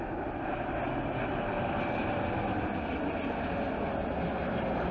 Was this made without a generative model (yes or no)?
yes